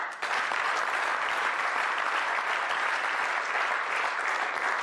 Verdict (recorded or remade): recorded